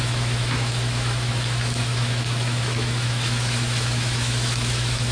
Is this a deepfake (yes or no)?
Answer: yes